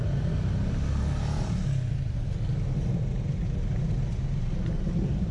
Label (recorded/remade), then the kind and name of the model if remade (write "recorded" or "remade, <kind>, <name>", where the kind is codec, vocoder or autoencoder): recorded